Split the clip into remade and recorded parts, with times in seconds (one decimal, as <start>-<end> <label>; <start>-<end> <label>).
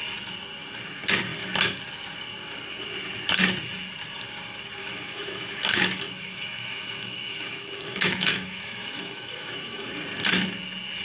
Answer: 0.0-4.8 recorded; 4.8-9.9 remade; 9.9-11.0 recorded